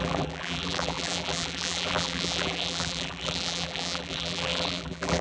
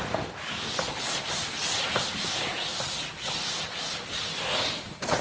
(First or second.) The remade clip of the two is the first